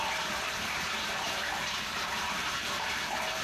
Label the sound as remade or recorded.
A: remade